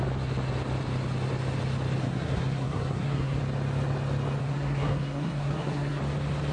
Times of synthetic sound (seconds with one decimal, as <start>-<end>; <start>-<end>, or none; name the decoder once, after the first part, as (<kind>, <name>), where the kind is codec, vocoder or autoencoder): 2.0-3.4 (codec, SNAC); 4.4-6.0